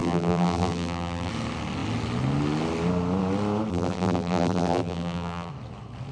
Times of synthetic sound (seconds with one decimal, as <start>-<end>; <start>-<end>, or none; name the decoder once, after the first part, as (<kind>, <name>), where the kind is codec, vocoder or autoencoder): 0.0-1.3 (vocoder, BigVGAN v2); 3.7-5.5